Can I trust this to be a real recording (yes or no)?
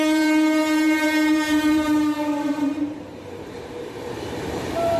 no